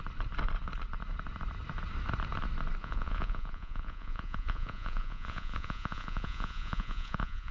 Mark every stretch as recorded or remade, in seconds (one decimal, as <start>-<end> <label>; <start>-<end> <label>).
0.0-2.8 recorded; 2.8-7.5 remade